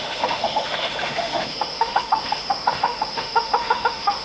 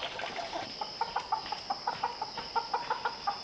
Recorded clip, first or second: second